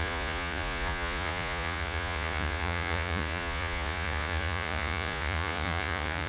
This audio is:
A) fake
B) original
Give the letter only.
A